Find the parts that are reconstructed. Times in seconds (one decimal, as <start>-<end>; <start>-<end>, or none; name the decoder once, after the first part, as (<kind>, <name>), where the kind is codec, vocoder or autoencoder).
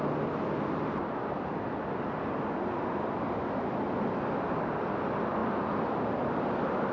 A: none